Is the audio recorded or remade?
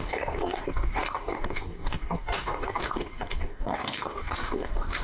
remade